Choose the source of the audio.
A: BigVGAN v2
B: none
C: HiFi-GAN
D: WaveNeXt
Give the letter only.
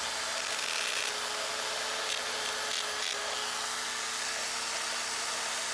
B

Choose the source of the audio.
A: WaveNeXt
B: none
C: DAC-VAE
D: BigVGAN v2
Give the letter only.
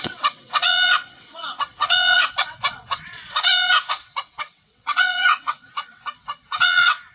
A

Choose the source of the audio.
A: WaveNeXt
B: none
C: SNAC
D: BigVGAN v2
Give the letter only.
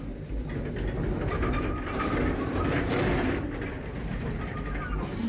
B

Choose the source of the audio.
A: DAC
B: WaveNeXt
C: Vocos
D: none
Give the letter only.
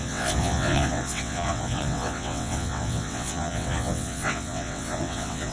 B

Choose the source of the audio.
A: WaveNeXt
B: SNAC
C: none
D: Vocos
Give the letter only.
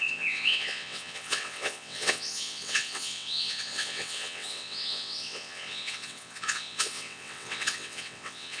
A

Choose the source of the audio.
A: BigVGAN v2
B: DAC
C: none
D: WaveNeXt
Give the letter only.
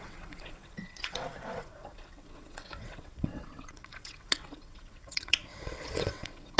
D